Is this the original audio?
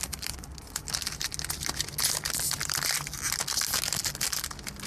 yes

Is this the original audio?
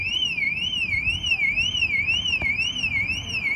yes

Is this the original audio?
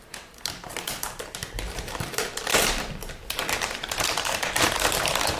no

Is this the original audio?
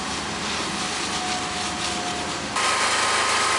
yes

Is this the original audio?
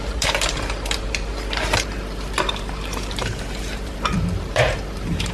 no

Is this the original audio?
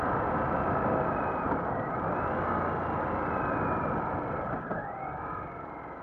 yes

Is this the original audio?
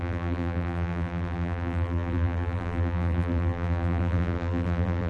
no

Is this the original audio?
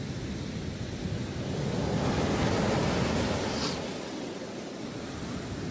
yes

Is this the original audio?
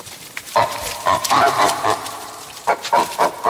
no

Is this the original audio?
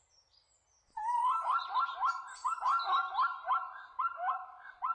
yes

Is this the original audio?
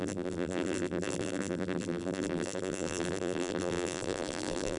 no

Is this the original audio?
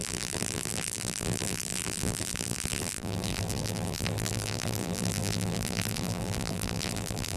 no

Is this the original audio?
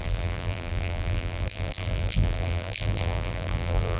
no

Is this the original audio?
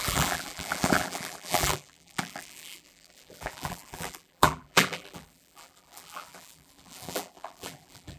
no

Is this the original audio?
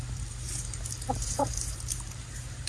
no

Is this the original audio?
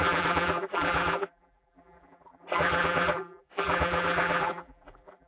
no